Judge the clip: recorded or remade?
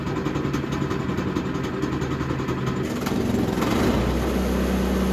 recorded